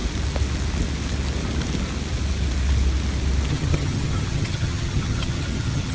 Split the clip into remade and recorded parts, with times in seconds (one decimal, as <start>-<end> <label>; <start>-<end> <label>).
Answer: 0.0-3.5 recorded; 3.5-5.9 remade